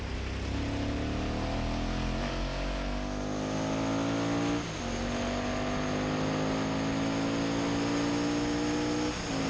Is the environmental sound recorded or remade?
recorded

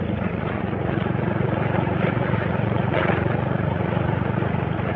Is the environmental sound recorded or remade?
remade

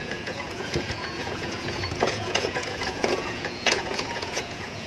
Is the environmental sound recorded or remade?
remade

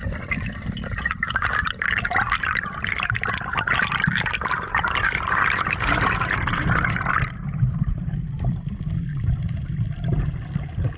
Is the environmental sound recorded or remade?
recorded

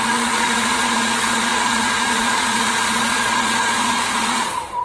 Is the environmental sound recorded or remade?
remade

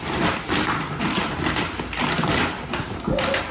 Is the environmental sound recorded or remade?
recorded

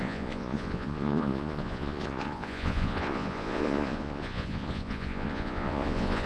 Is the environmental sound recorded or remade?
remade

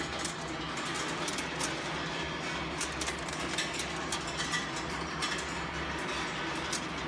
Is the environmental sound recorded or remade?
recorded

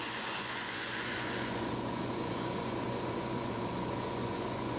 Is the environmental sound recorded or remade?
remade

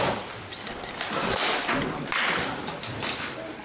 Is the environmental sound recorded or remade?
recorded